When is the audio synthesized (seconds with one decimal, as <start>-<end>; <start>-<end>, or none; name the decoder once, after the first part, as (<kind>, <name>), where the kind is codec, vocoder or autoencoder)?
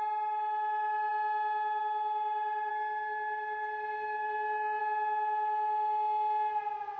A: 2.7-4.8 (codec, SNAC)